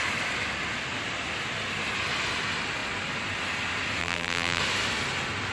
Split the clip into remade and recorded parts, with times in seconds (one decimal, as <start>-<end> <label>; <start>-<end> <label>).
0.0-4.0 recorded; 4.0-4.6 remade; 4.6-5.5 recorded